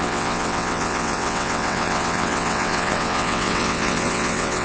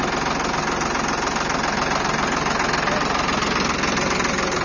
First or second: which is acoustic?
second